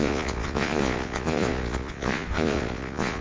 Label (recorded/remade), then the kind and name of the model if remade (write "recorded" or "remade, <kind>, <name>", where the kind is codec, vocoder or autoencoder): remade, vocoder, Vocos